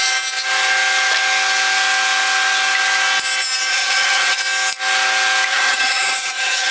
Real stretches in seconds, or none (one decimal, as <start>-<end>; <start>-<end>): 0.0-3.7; 4.4-5.5